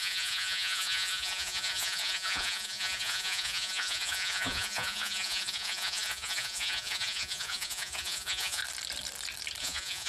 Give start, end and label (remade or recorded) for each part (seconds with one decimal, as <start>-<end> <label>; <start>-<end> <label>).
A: 0.0-8.6 remade; 8.6-9.6 recorded; 9.6-10.1 remade